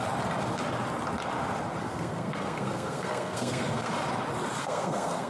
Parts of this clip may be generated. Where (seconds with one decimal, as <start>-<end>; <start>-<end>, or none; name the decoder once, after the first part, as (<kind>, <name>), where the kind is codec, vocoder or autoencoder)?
1.8-3.9 (codec, SNAC); 4.6-5.3